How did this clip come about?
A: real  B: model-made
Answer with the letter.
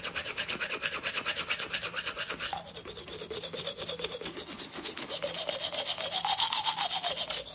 A